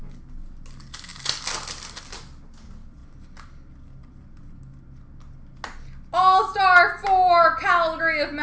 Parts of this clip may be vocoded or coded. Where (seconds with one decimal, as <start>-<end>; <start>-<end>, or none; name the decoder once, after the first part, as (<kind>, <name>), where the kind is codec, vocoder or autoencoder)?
none